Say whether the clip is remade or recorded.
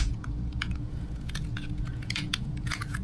remade